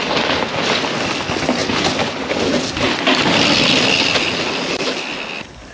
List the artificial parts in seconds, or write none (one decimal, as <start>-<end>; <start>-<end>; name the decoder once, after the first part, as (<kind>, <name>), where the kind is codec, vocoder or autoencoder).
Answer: none